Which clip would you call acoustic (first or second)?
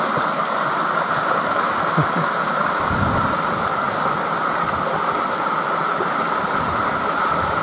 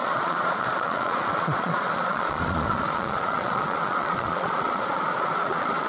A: first